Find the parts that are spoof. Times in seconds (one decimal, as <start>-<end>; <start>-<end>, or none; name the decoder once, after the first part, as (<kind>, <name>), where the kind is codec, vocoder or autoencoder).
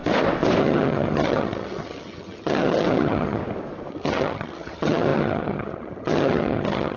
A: 0.6-3.4 (vocoder, HiFi-GAN); 3.9-7.0